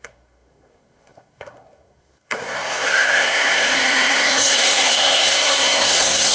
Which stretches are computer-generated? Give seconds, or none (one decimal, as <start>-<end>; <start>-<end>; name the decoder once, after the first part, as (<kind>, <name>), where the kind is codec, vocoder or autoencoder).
0.0-6.3 (codec, SNAC)